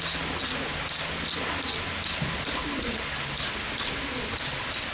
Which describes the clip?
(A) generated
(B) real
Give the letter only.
B